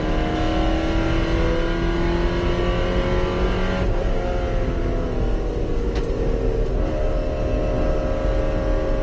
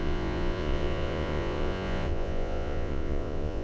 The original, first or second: first